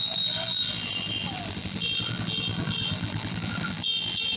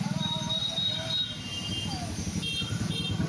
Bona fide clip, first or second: second